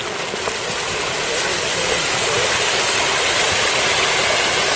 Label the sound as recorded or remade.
recorded